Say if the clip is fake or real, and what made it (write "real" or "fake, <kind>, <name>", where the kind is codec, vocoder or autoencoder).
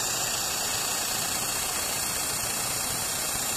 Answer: real